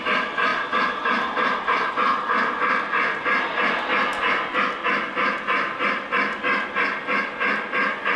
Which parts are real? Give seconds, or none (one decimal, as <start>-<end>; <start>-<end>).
0.0-0.5; 1.9-4.1; 4.7-8.2